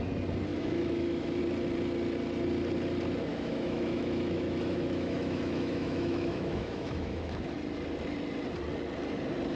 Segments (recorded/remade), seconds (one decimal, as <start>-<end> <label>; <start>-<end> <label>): 0.0-0.5 recorded; 0.5-1.4 remade; 1.4-3.3 recorded; 3.3-7.5 remade; 7.5-9.6 recorded